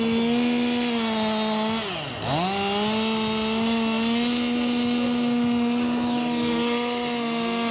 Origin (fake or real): real